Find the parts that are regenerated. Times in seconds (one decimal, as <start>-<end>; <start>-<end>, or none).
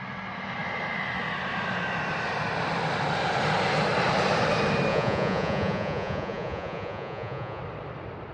4.9-7.6